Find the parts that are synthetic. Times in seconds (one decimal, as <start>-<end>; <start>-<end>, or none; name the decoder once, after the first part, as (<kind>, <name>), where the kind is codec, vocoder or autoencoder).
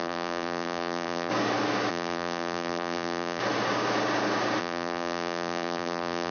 0.0-1.3 (vocoder, BigVGAN v2); 1.9-3.4; 4.6-6.3